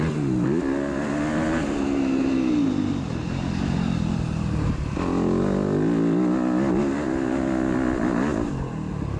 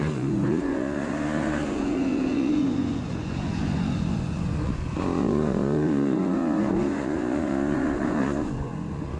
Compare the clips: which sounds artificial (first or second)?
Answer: second